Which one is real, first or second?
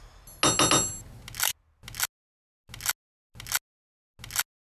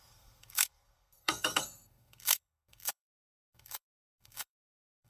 first